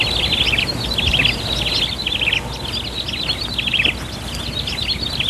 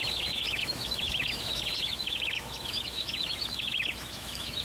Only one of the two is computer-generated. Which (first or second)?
second